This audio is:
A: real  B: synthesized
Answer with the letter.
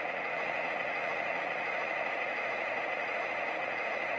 B